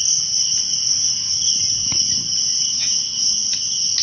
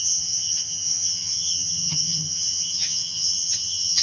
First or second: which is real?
first